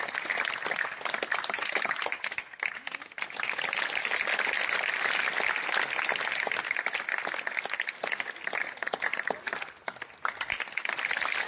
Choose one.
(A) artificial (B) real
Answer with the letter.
B